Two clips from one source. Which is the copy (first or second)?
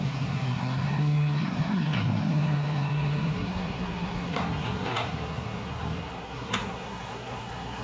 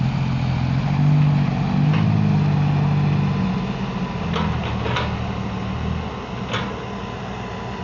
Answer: first